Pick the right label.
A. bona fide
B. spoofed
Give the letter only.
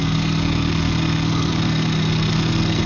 B